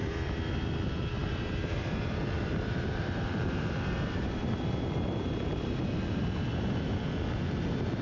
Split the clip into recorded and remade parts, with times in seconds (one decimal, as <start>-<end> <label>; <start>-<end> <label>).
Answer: 0.0-0.5 remade; 0.5-1.2 recorded; 1.2-5.8 remade; 5.8-8.0 recorded